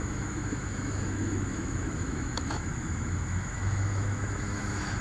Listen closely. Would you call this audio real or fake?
fake